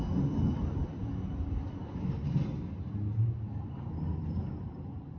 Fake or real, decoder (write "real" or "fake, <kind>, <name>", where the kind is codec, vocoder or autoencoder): real